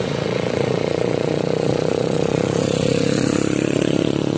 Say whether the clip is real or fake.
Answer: fake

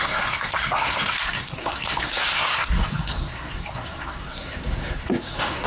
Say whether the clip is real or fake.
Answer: fake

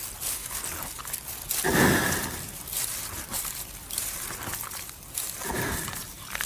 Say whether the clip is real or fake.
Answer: real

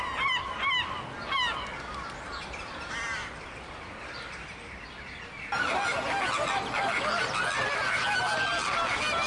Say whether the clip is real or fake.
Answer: real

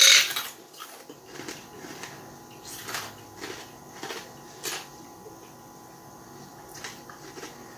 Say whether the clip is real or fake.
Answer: real